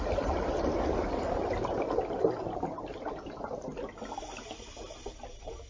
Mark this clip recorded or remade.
recorded